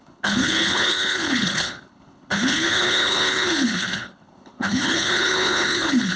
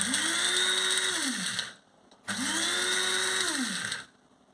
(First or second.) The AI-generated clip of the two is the first